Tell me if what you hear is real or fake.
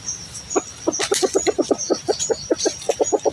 real